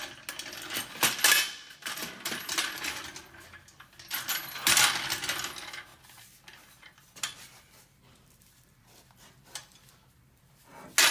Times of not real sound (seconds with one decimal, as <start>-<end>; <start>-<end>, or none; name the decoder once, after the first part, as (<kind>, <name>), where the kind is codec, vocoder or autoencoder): 5.9-10.5 (vocoder, BigVGAN v2)